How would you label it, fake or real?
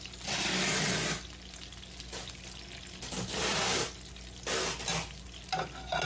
real